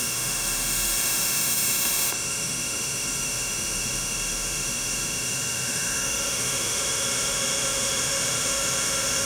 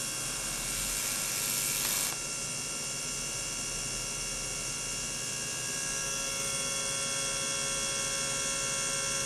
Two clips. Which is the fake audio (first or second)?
first